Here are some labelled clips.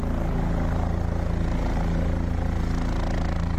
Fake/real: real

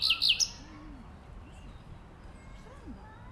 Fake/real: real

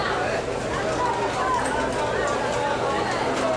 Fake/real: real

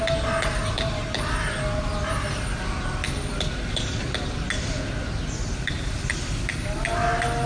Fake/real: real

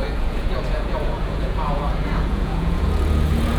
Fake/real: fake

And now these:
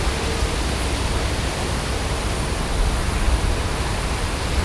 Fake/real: real